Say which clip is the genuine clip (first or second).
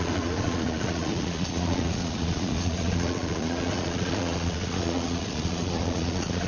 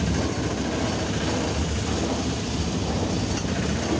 second